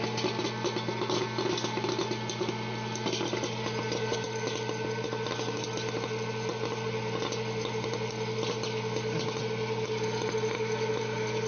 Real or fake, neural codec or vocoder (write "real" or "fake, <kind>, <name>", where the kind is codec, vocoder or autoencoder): real